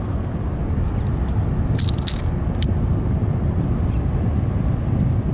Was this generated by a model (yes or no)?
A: no